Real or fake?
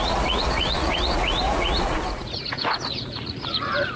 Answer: fake